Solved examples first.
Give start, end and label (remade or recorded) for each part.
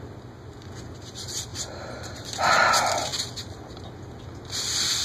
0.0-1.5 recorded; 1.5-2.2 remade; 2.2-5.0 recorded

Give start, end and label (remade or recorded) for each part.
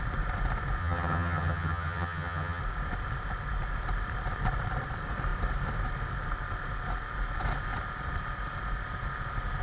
0.0-0.8 recorded; 0.8-2.6 remade; 2.6-9.6 recorded